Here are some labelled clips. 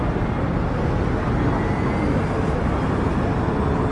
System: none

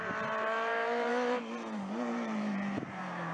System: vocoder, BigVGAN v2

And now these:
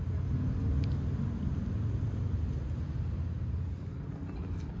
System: none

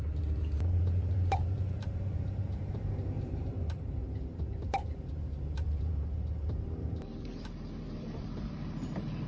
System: vocoder, BigVGAN v2